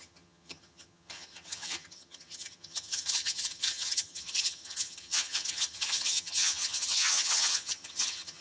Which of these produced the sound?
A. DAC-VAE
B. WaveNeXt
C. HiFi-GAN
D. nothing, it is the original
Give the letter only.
C